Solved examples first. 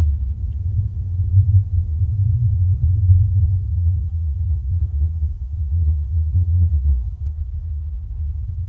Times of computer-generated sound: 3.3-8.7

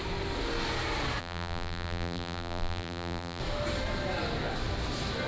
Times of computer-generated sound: 1.2-3.4

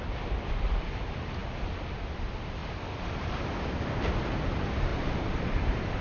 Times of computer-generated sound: 2.6-3.1; 4.9-6.0

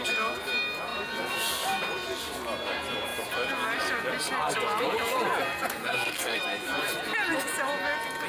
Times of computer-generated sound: 5.8-6.4

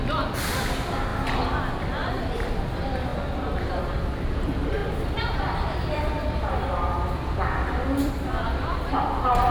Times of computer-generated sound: 0.0-1.1; 1.7-3.1; 3.8-9.5